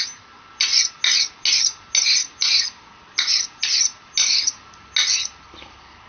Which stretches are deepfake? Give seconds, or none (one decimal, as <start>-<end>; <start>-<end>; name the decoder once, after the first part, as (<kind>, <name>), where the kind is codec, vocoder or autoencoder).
none